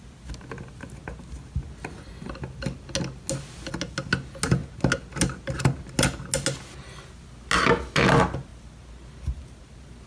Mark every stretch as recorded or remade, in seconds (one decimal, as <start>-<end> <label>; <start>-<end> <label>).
0.0-10.1 recorded